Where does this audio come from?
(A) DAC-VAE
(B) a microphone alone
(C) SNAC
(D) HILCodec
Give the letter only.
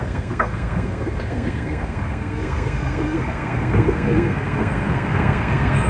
C